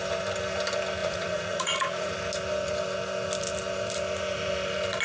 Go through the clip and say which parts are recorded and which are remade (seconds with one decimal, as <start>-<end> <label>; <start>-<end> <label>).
0.0-1.0 recorded; 1.0-2.1 remade; 2.1-5.0 recorded